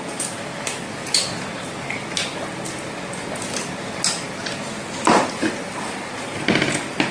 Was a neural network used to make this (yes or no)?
no